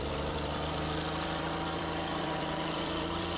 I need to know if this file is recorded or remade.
remade